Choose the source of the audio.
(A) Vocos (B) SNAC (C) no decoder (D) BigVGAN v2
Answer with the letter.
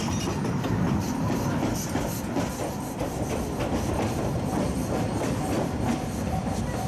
C